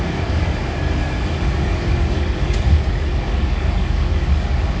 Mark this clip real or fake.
fake